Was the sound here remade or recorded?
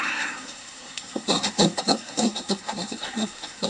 remade